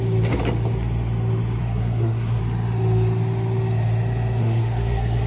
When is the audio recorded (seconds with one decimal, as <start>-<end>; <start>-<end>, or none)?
0.0-1.6; 2.4-4.4